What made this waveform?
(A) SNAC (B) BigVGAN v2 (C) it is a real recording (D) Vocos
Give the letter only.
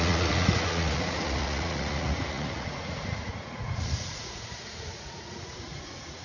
D